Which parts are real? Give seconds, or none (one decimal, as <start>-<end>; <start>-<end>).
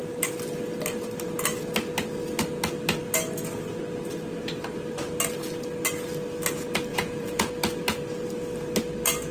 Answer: 0.0-6.9; 7.5-9.3